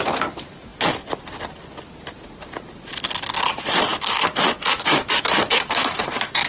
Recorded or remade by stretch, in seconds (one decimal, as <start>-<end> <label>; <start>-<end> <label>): 0.0-6.5 remade